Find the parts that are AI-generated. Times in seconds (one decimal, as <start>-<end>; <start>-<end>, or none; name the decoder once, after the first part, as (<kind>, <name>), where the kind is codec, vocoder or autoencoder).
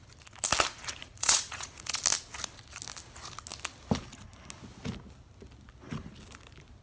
1.0-2.0 (vocoder, Vocos)